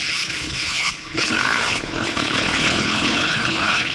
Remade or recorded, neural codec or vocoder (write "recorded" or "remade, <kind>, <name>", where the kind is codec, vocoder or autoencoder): remade, codec, HILCodec